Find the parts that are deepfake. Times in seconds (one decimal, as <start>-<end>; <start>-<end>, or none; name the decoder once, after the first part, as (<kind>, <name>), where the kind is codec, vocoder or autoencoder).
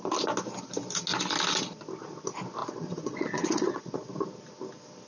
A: 2.6-4.1 (vocoder, Vocos)